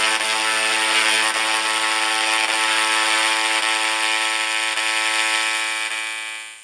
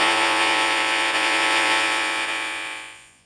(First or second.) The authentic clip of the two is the first